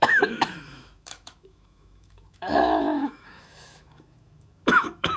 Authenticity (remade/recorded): remade